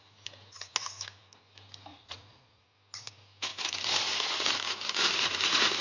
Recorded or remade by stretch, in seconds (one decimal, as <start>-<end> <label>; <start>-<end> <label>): 0.0-1.9 recorded; 1.9-2.6 remade; 2.6-5.8 recorded